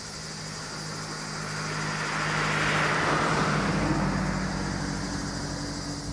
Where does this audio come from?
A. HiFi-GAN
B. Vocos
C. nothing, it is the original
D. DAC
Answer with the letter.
C